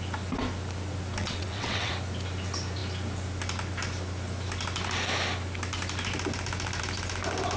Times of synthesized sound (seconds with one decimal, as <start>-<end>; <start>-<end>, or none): 1.2-1.9